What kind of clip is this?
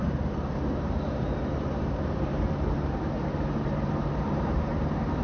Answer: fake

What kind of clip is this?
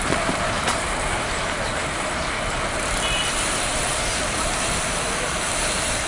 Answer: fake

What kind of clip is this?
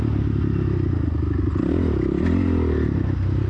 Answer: real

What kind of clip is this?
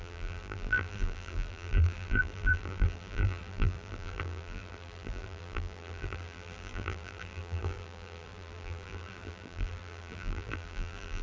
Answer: fake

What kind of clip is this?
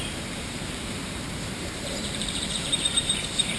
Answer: fake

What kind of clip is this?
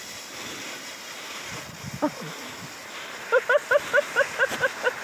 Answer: real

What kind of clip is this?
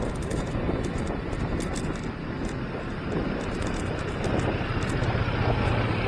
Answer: real